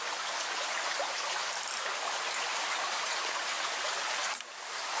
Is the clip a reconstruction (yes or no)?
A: no